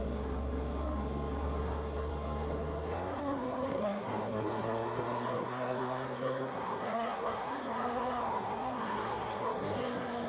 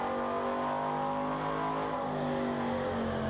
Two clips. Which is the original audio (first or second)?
second